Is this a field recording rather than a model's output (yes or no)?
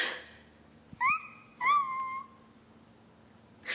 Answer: yes